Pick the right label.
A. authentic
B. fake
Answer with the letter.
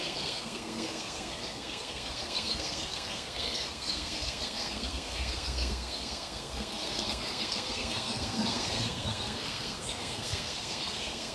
B